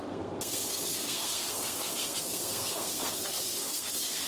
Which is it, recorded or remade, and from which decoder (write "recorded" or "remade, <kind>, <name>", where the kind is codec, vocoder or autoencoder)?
remade, codec, SNAC